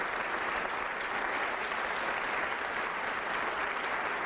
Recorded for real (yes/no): yes